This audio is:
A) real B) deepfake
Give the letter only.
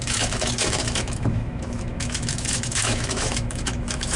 B